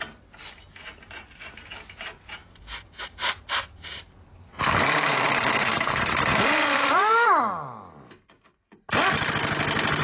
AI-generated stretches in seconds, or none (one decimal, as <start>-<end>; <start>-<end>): 2.4-7.4